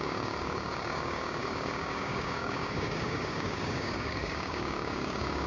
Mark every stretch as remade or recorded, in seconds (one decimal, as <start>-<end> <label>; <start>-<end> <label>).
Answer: 0.0-5.5 remade